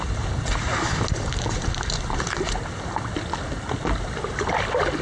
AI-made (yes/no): no